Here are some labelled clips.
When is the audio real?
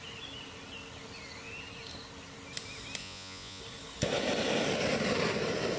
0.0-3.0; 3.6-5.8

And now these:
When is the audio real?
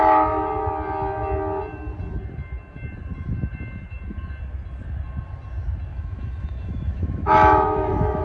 0.0-5.9